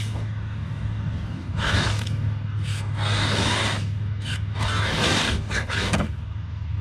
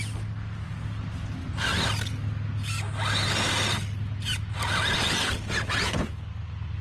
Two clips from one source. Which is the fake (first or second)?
first